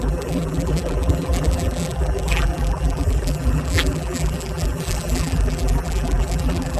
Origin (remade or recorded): remade